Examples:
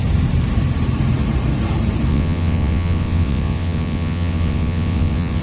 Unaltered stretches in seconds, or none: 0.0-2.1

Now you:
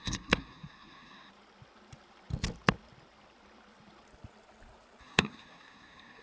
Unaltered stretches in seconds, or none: 1.3-5.0

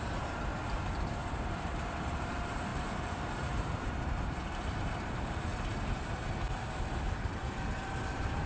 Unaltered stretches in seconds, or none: 0.5-1.3; 5.5-7.6

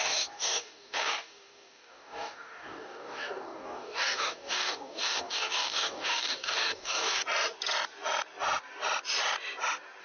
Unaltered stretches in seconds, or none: 7.2-10.0

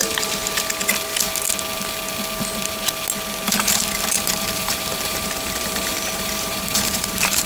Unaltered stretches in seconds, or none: 0.0-3.5

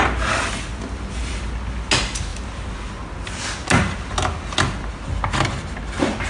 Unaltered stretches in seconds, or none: 0.0-6.3

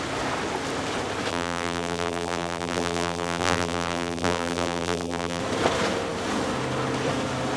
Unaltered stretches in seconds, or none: 0.0-1.3; 5.4-7.6